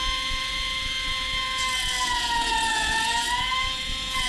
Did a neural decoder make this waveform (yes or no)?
yes